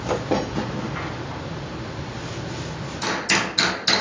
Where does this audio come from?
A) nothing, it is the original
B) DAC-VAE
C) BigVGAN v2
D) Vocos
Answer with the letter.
A